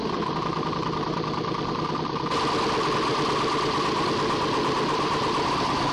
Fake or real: real